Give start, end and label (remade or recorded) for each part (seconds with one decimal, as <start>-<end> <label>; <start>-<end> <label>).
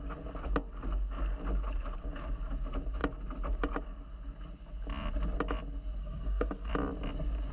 0.0-6.0 recorded; 6.0-6.7 remade; 6.7-7.5 recorded